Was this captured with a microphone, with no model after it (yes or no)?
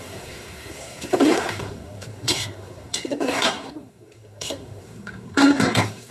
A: no